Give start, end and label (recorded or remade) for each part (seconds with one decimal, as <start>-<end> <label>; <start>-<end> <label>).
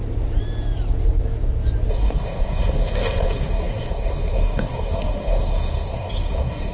0.0-1.9 recorded; 1.9-6.7 remade